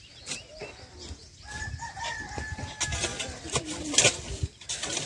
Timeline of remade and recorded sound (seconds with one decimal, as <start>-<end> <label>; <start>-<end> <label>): 0.0-3.1 recorded; 3.1-5.1 remade